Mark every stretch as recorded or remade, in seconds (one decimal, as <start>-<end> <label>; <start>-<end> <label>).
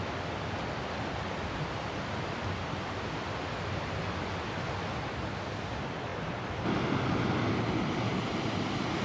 0.0-9.0 recorded